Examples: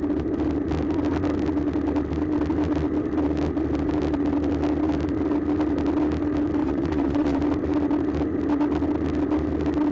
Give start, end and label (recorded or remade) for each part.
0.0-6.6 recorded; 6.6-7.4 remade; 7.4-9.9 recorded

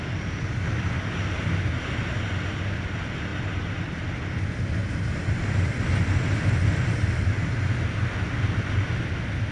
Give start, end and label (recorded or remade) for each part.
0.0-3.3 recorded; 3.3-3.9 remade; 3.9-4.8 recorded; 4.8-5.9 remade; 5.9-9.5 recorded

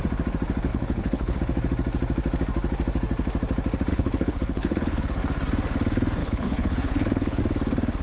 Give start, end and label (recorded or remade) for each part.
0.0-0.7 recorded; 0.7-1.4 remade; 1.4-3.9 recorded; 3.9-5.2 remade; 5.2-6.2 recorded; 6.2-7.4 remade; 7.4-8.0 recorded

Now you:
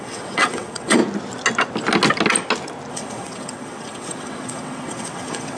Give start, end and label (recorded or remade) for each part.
0.0-1.0 remade; 1.0-2.9 recorded; 2.9-5.6 remade

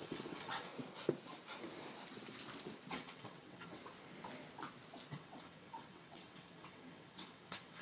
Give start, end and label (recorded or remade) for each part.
0.0-0.7 remade; 0.7-2.9 recorded; 2.9-3.8 remade; 3.8-5.1 recorded; 5.1-7.8 remade